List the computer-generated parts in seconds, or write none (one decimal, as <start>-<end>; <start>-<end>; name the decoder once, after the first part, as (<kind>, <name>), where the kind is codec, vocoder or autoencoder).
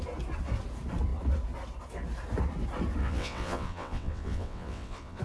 3.0-5.2 (vocoder, WaveNeXt)